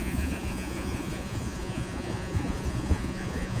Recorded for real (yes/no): no